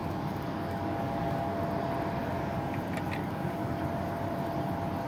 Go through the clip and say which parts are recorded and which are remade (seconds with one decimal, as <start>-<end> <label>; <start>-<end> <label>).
0.0-1.6 remade; 1.6-2.2 recorded; 2.2-2.7 remade; 2.7-3.2 recorded; 3.2-3.8 remade; 3.8-5.1 recorded